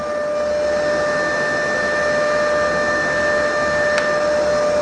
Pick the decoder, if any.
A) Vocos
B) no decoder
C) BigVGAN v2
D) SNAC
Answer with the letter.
B